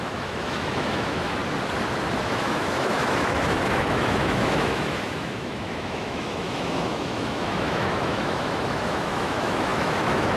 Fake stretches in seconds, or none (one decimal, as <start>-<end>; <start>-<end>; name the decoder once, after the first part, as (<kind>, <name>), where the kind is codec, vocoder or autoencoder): 0.0-1.4 (autoencoder, DAC-VAE); 2.3-10.4